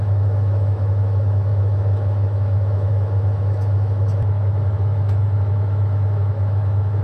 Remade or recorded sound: remade